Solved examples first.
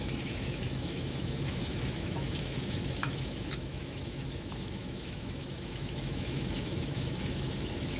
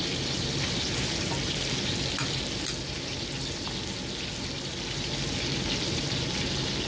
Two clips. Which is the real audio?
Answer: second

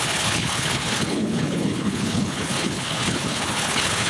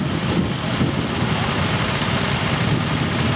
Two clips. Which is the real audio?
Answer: second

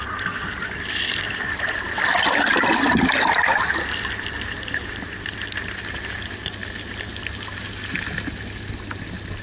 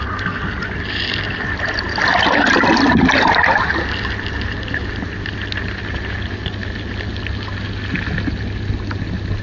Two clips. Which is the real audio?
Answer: second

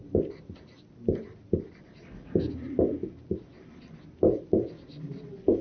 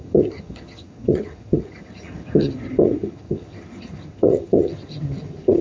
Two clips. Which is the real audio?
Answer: first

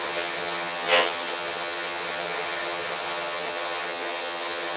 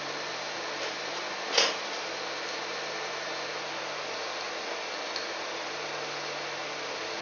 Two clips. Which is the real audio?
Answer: second